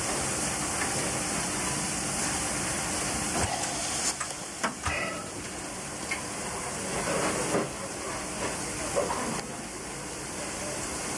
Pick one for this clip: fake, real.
real